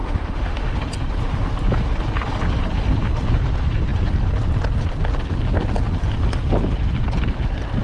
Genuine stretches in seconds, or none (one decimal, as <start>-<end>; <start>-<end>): 0.8-7.8